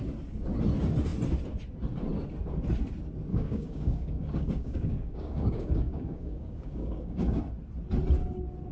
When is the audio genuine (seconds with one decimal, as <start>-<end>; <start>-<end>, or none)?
0.0-3.3; 7.4-8.7